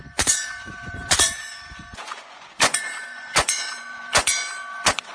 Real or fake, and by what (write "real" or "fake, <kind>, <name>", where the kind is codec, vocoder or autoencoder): fake, vocoder, Vocos